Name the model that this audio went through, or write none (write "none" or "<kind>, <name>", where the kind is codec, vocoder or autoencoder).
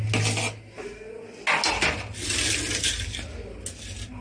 none